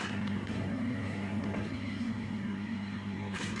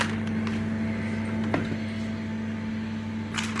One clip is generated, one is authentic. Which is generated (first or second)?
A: first